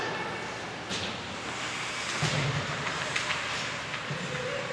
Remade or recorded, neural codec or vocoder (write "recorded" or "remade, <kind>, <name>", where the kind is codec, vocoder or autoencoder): recorded